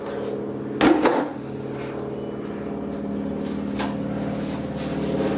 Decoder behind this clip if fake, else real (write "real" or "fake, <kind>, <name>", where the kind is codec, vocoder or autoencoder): real